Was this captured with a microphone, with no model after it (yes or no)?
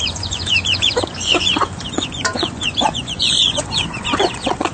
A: no